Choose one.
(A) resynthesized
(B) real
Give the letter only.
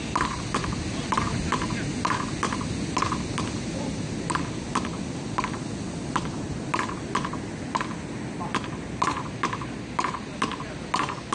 B